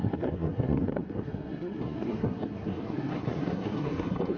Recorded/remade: remade